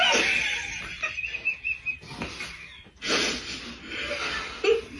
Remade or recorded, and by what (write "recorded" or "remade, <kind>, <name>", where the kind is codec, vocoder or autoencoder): recorded